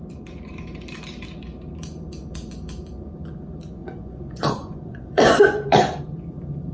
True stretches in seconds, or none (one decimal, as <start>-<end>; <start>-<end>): 0.0-3.8; 6.0-6.7